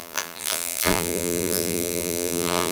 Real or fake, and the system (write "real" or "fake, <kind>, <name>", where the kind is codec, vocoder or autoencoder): fake, vocoder, BigVGAN v2